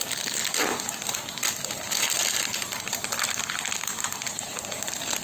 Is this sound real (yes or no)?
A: yes